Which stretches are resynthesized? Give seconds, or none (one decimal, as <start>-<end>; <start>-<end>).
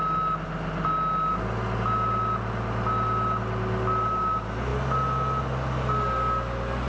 none